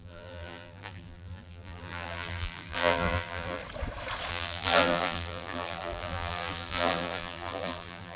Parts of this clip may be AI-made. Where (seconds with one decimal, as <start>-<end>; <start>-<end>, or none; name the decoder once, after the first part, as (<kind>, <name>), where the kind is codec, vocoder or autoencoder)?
0.0-3.6 (vocoder, BigVGAN v2); 4.3-8.2